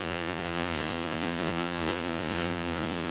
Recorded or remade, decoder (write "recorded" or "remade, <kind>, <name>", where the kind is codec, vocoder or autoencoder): remade, vocoder, Vocos